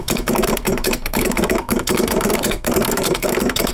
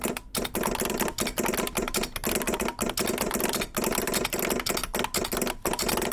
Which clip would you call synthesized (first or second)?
first